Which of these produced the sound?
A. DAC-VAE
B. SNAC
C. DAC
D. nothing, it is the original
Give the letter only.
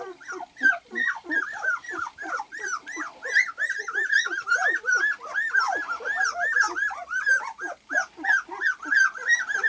D